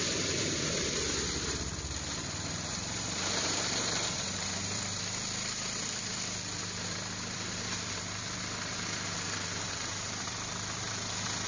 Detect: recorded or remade remade